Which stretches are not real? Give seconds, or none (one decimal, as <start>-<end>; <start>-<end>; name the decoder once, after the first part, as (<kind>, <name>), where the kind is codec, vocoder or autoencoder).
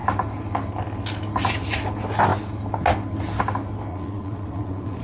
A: 3.9-5.0 (vocoder, Vocos)